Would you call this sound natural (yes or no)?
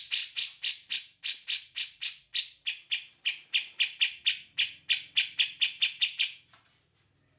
yes